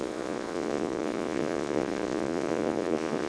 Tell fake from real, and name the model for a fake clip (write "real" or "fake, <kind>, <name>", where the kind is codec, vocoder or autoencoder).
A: fake, vocoder, Vocos